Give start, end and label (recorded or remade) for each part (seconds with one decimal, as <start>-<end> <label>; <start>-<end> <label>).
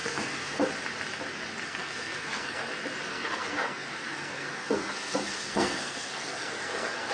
0.0-0.7 remade; 0.7-1.6 recorded; 1.6-2.7 remade; 2.7-3.1 recorded; 3.1-7.1 remade